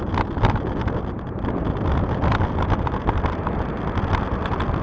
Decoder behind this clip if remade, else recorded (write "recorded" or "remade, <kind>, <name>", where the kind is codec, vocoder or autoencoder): recorded